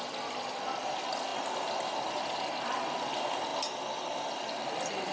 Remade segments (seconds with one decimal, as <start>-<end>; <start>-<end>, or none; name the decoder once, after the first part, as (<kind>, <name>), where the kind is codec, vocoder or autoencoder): none